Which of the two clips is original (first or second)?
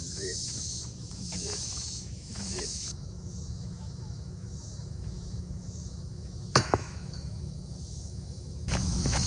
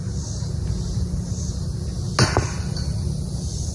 second